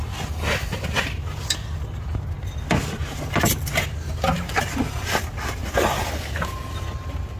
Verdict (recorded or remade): recorded